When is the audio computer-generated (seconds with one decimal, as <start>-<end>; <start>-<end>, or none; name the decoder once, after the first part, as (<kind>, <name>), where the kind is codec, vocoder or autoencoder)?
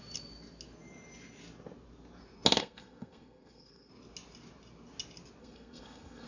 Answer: 2.6-3.9 (codec, SNAC); 5.4-6.3